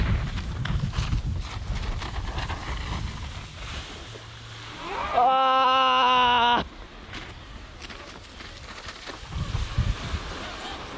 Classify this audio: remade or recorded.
recorded